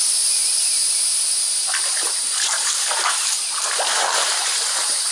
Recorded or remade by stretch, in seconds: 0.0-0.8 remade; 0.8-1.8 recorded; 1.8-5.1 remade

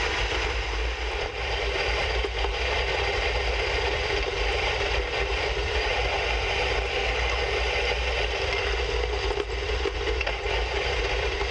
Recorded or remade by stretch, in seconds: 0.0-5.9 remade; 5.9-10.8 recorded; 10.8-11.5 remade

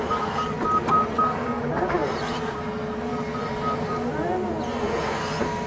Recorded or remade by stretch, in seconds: 0.0-5.7 recorded